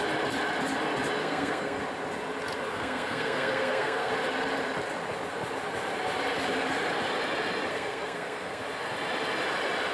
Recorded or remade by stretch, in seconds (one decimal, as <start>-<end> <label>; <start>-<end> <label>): 0.0-1.2 recorded; 1.2-1.8 remade; 1.8-2.7 recorded; 2.7-4.1 remade; 4.1-7.7 recorded; 7.7-8.6 remade; 8.6-9.9 recorded